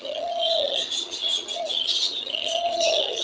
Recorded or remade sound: remade